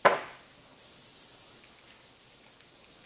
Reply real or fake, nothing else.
real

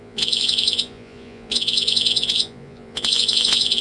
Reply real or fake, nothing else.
fake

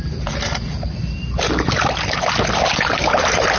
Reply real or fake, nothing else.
real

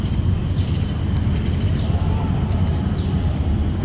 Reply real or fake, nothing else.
real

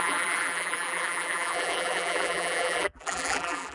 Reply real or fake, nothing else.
fake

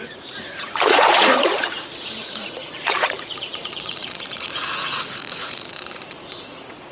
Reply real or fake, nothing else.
fake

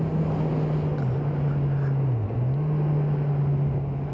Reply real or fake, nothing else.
real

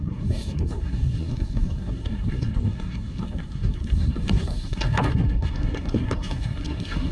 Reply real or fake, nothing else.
fake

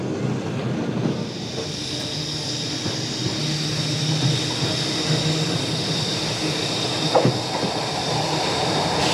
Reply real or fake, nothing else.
real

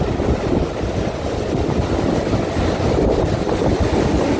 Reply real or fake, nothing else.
real